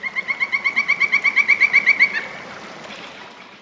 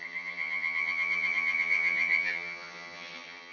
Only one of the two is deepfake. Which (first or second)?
second